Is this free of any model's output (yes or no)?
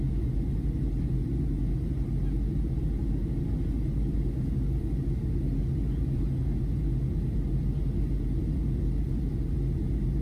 yes